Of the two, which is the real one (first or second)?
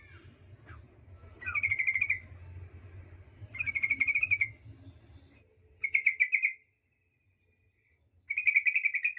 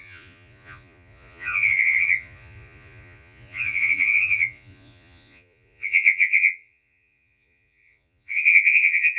first